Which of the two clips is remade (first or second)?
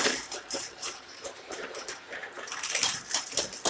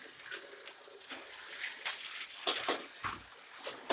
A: first